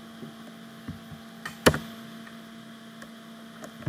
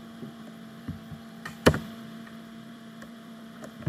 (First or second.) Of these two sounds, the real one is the first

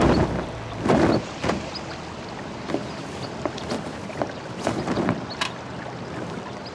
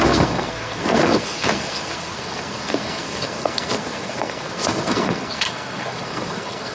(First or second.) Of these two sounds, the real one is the first